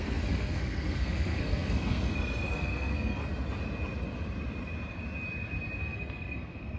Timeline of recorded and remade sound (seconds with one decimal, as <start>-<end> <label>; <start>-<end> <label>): 0.0-3.2 remade; 3.2-5.8 recorded; 5.8-6.8 remade